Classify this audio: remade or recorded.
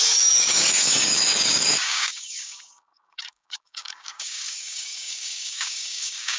remade